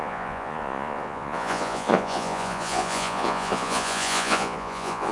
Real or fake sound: fake